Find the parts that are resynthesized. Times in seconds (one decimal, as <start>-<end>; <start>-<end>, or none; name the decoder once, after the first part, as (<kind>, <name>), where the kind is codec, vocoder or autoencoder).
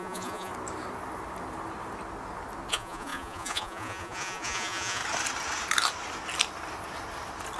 0.0-0.5 (vocoder, Vocos); 2.7-5.0